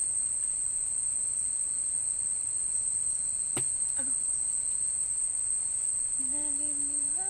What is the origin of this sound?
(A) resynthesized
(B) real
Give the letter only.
B